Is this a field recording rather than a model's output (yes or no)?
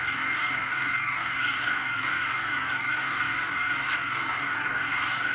no